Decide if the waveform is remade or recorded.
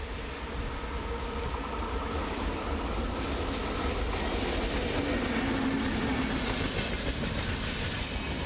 recorded